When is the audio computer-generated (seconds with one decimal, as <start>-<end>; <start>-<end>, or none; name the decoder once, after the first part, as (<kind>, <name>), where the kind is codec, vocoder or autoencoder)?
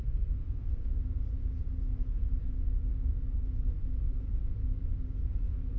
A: 0.0-0.9 (codec, SNAC)